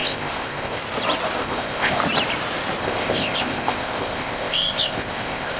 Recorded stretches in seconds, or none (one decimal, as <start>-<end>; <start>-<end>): 0.8-1.4; 2.0-2.8